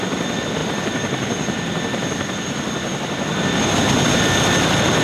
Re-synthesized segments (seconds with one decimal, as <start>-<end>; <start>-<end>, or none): none